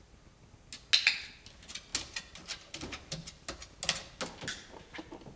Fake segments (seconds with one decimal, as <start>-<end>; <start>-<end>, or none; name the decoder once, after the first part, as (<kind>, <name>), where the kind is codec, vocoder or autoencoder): none